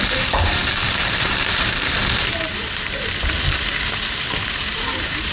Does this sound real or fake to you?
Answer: fake